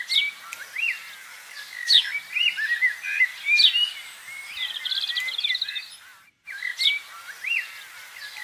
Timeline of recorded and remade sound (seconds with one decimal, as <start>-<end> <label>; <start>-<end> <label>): 0.0-1.2 recorded; 1.2-2.1 remade; 2.1-8.4 recorded